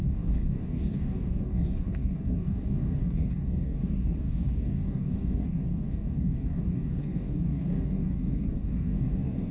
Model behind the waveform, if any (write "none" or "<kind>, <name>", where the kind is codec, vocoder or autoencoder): codec, DAC